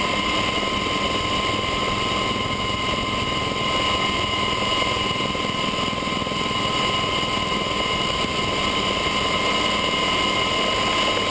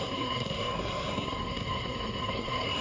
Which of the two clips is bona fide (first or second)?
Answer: first